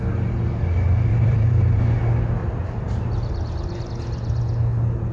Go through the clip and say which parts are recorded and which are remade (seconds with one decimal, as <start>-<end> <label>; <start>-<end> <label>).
0.0-1.1 recorded; 1.1-1.8 remade; 1.8-2.4 recorded; 2.4-3.9 remade; 3.9-5.1 recorded